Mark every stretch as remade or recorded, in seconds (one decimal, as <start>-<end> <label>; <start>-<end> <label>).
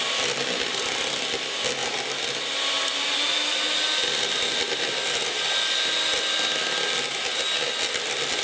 0.0-8.4 recorded